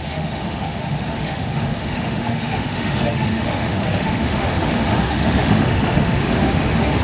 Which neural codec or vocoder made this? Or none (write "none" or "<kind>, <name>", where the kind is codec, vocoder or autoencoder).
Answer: autoencoder, DAC-VAE